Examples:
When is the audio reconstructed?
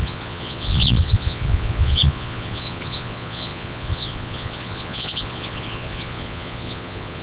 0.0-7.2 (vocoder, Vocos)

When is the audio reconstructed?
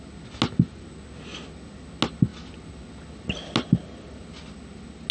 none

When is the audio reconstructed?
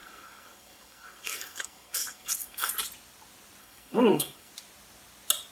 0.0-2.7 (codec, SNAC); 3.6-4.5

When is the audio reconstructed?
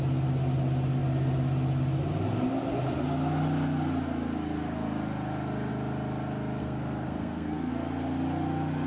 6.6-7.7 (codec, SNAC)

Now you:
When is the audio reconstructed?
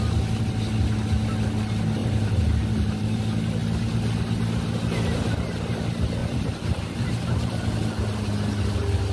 2.0-3.2 (vocoder, BigVGAN v2); 6.2-7.7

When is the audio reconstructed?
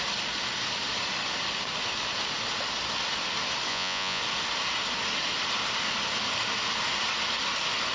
3.7-4.2 (vocoder, Vocos)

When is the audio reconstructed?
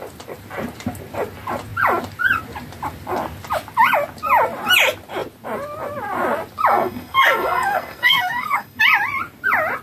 6.7-8.8 (codec, SNAC)